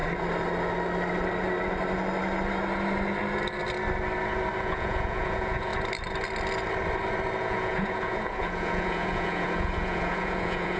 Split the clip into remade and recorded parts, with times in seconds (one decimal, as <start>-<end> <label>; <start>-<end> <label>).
0.0-4.6 recorded; 4.6-5.7 remade; 5.7-7.4 recorded; 7.4-10.8 remade